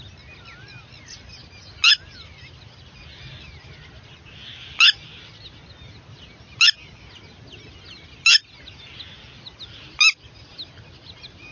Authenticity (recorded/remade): recorded